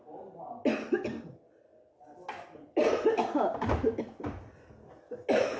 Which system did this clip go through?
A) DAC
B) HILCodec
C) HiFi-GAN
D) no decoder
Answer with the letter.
D